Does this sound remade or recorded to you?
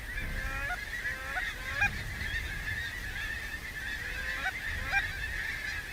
recorded